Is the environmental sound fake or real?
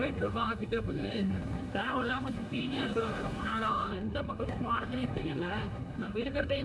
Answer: fake